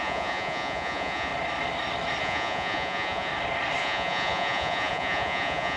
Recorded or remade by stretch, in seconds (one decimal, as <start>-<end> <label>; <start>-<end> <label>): 0.0-1.3 remade; 1.3-2.2 recorded; 2.2-3.3 remade; 3.3-3.8 recorded; 3.8-5.8 remade